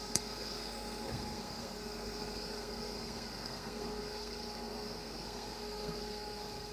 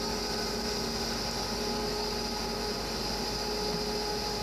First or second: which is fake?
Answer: first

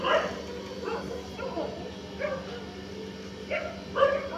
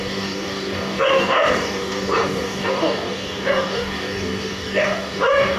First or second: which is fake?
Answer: second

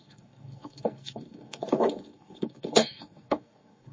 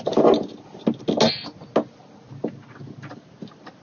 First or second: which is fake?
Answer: first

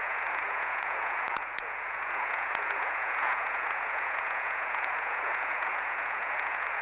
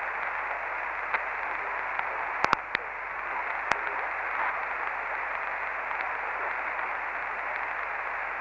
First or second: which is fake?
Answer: first